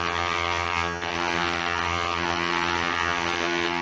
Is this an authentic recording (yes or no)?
no